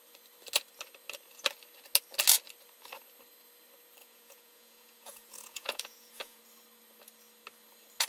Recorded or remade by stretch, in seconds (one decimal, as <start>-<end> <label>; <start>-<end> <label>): 0.0-4.0 recorded; 4.0-6.4 remade; 6.4-8.1 recorded